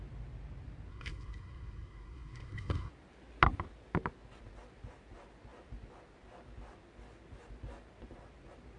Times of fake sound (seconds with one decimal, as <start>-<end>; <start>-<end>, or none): 0.9-2.9